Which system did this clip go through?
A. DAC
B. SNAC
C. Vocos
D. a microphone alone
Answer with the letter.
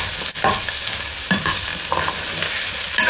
D